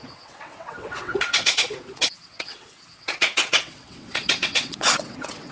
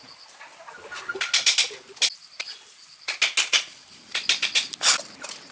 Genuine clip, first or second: second